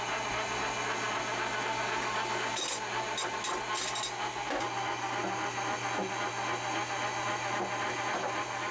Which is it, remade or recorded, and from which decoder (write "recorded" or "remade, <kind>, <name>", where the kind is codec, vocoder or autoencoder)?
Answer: recorded